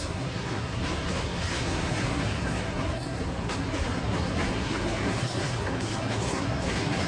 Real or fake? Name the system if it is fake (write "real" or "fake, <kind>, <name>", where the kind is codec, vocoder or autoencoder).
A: fake, codec, SNAC